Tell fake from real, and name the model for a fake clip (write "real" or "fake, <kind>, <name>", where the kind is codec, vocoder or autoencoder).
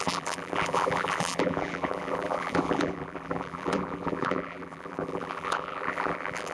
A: fake, vocoder, BigVGAN v2